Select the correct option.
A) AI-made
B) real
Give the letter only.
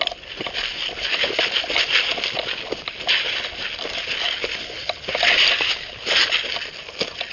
B